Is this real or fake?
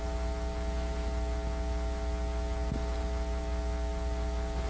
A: real